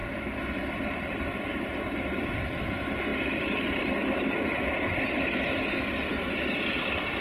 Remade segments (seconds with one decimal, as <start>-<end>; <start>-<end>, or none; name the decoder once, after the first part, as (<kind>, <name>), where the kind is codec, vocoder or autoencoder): 0.7-1.5 (vocoder, BigVGAN v2); 2.1-3.1; 6.1-7.2